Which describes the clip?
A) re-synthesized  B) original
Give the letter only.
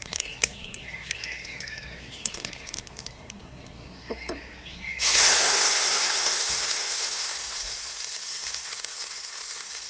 A